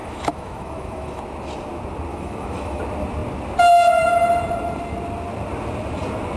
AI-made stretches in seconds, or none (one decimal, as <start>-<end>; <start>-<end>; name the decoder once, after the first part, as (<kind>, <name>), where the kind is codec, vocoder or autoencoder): 0.0-1.2 (autoencoder, DAC-VAE); 2.1-2.8